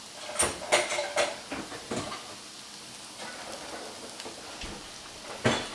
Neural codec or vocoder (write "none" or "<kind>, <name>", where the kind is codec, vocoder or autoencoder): none